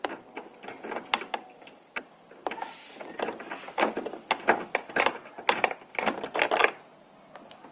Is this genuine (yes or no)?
yes